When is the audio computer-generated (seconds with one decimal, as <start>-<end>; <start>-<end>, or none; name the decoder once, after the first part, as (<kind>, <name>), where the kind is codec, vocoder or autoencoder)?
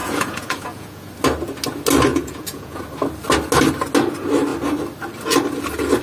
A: 0.0-1.1 (vocoder, Vocos); 2.1-2.8